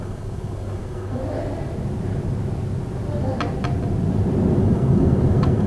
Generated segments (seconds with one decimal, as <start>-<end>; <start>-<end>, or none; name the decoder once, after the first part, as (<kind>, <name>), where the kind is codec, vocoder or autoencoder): 0.0-1.2 (codec, SNAC); 4.6-5.7